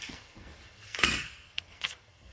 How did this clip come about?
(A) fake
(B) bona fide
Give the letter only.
A